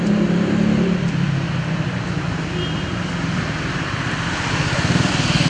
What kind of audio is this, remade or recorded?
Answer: recorded